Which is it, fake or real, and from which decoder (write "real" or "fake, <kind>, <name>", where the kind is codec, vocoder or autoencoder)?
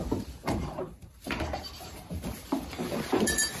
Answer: fake, vocoder, BigVGAN v2